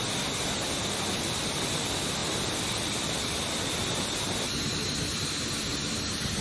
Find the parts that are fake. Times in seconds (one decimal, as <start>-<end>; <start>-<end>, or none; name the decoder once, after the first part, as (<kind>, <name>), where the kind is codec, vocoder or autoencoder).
none